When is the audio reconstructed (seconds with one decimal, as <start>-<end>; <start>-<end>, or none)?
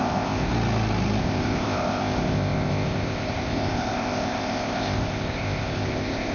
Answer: 0.0-0.5; 1.2-6.3